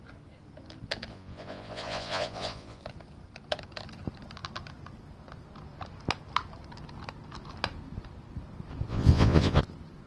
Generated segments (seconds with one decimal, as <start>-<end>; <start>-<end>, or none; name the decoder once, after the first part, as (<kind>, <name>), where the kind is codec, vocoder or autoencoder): 1.1-2.8 (vocoder, Vocos); 8.9-9.6